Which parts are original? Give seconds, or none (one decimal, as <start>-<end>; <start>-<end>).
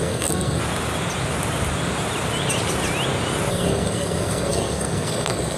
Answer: 0.6-3.5